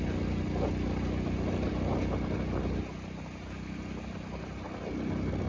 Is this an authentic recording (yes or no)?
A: yes